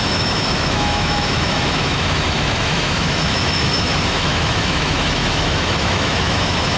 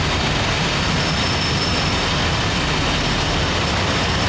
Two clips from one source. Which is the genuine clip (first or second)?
second